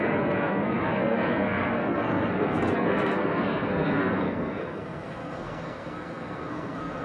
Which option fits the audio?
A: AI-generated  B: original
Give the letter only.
A